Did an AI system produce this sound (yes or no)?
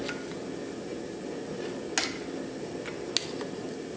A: no